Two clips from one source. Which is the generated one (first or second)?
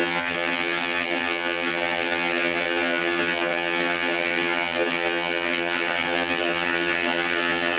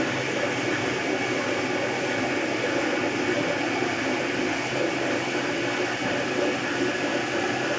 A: first